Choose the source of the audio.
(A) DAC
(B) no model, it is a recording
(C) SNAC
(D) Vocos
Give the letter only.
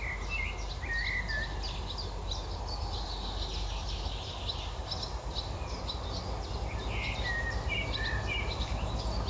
B